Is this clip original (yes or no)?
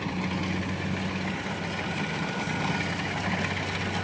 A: yes